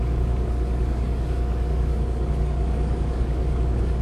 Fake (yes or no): yes